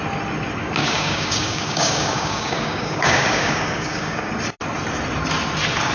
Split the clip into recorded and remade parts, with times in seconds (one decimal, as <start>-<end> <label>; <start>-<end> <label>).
0.0-0.8 recorded; 0.8-4.3 remade; 4.3-5.9 recorded